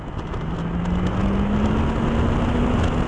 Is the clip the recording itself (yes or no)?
yes